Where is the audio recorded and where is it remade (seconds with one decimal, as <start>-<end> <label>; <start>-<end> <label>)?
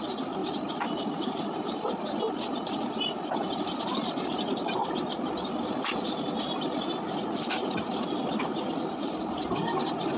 0.0-4.8 remade; 4.8-7.7 recorded; 7.7-10.2 remade